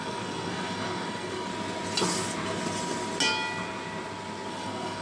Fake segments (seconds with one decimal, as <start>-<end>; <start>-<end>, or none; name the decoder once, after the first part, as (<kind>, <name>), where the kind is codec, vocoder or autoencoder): 0.0-1.5 (codec, SNAC); 4.5-5.0